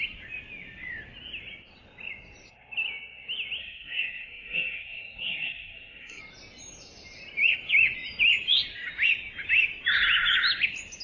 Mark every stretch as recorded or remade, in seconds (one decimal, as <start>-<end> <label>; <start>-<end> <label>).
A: 0.0-3.6 recorded; 3.6-6.2 remade; 6.2-11.0 recorded